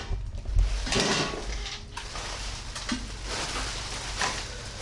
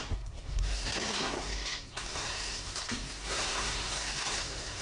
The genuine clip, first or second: first